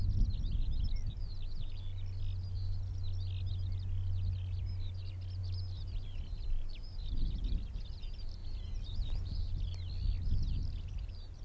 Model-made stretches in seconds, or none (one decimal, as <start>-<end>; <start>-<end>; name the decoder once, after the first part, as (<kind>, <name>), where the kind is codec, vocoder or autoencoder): 5.4-6.4 (vocoder, BigVGAN v2)

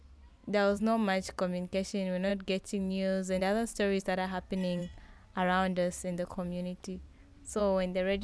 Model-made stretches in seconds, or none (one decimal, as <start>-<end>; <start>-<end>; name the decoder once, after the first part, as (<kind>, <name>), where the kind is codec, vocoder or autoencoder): 0.4-1.9 (vocoder, BigVGAN v2); 2.3-3.4; 4.8-7.6